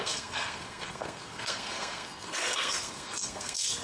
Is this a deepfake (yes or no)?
yes